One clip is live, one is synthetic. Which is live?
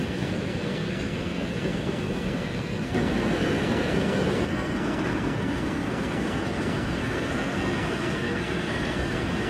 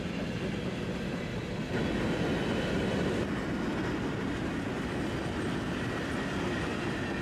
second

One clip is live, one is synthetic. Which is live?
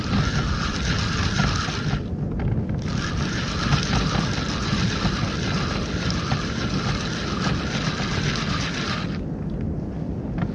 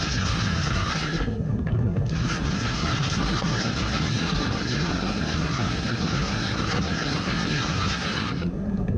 first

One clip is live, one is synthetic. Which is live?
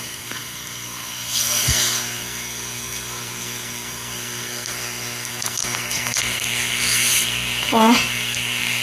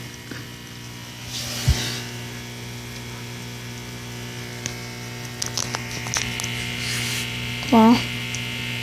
second